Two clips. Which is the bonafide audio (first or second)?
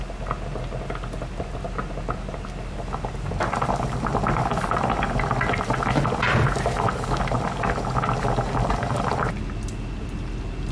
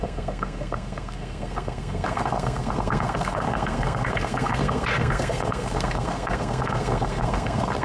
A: first